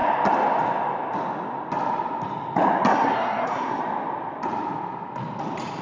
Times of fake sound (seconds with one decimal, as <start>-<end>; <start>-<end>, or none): 2.9-3.8